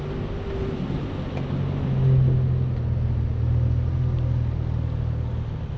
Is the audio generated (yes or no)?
no